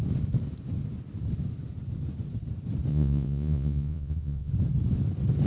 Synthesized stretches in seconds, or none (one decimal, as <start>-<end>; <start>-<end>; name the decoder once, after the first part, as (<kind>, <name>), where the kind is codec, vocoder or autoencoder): 2.9-4.5 (vocoder, Vocos)